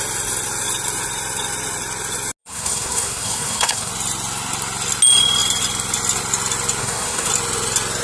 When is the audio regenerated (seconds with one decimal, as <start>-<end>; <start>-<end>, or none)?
2.4-3.9; 6.8-7.3